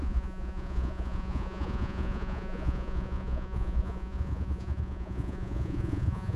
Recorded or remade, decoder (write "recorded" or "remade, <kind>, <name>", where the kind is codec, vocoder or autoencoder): remade, vocoder, Vocos